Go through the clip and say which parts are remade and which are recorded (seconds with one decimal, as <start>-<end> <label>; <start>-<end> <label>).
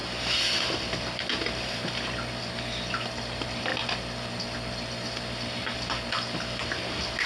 0.0-7.3 recorded